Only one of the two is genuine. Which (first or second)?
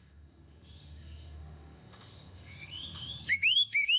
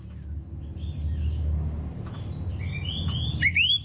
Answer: second